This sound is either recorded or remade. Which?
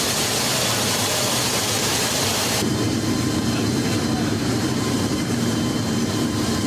remade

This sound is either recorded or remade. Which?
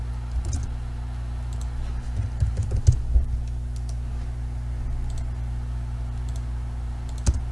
recorded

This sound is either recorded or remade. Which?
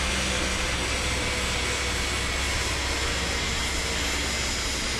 recorded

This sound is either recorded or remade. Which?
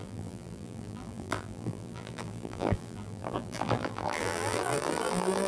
remade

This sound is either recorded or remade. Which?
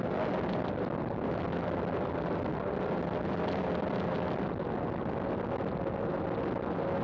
recorded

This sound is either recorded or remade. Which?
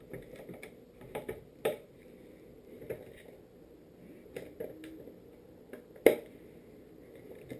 recorded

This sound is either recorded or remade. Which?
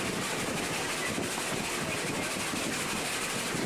recorded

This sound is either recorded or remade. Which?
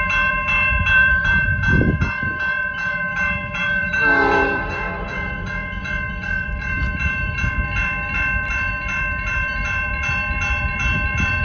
remade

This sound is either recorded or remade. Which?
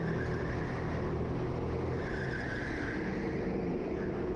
recorded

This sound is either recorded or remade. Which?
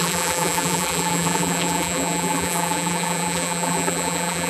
remade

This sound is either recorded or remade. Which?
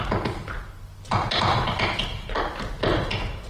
recorded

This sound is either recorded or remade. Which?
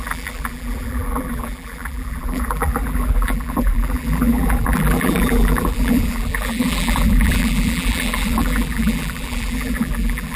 remade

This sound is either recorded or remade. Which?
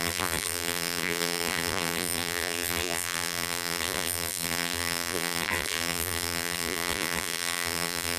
remade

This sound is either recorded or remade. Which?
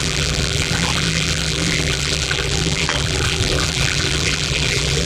remade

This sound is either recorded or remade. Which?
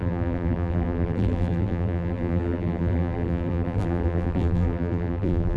remade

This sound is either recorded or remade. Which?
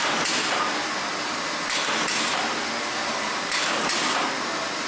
recorded